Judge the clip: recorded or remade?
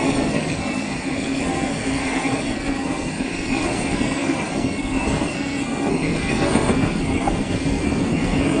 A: remade